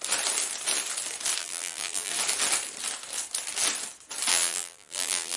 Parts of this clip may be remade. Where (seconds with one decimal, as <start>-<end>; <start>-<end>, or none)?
1.4-2.1; 4.3-5.4